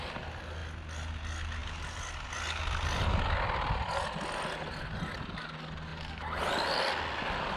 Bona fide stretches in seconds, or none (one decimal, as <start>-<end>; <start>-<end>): 0.0-7.6